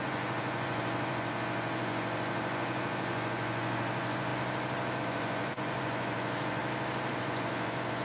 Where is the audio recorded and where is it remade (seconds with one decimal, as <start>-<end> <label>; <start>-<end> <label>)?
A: 0.0-4.3 remade; 4.3-5.0 recorded; 5.0-6.6 remade; 6.6-7.2 recorded; 7.2-8.0 remade